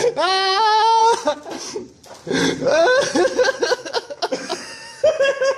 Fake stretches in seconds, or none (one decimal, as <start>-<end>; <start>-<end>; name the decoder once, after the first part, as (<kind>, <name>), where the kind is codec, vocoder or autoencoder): 0.0-1.0 (autoencoder, DAC-VAE); 3.7-5.6